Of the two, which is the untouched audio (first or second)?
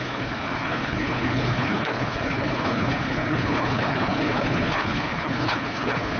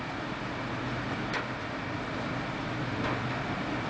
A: second